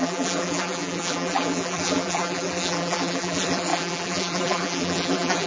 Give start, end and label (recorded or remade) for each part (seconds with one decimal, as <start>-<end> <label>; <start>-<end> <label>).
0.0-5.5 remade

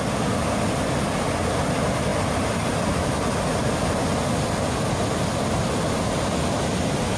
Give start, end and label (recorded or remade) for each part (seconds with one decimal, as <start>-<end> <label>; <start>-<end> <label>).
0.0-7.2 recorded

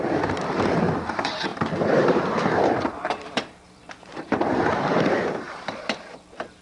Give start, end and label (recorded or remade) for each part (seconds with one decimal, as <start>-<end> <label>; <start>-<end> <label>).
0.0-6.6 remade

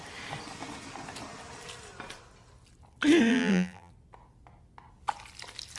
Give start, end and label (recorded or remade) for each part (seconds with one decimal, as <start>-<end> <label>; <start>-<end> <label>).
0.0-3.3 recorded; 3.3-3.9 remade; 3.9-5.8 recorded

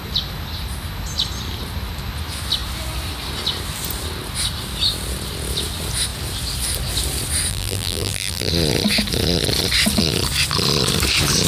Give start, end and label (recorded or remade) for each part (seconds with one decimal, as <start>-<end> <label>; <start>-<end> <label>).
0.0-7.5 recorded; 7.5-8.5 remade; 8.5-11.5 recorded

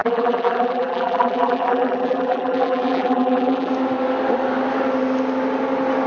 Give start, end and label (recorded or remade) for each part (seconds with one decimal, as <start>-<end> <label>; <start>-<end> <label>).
0.0-3.7 remade; 3.7-6.1 recorded

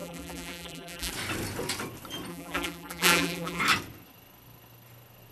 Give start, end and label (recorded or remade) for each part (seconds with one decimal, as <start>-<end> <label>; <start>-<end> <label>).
0.0-1.1 remade; 1.1-2.3 recorded; 2.3-3.6 remade; 3.6-5.3 recorded